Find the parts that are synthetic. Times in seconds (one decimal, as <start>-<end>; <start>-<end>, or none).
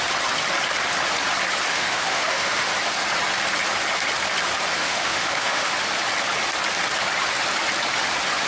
1.7-2.7; 4.8-5.7